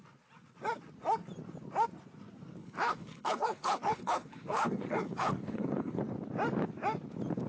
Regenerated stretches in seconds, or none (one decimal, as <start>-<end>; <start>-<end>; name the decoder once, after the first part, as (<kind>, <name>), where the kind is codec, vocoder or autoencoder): 2.6-6.0 (codec, HILCodec)